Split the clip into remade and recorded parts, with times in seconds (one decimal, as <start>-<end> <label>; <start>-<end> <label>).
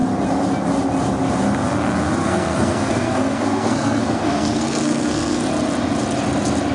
0.0-2.2 recorded; 2.2-5.4 remade; 5.4-6.7 recorded